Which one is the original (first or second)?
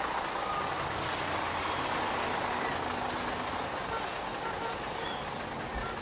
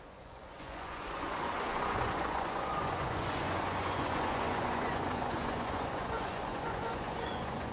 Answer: first